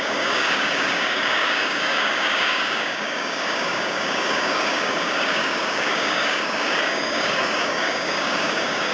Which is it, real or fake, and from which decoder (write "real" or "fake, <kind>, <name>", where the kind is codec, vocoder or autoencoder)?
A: fake, codec, DAC